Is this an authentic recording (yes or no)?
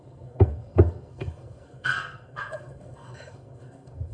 no